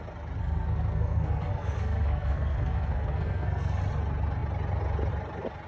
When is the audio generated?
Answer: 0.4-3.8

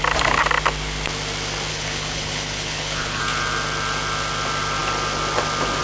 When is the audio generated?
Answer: 1.7-3.2

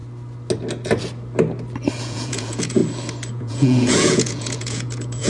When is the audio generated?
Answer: 2.0-2.8; 3.3-5.3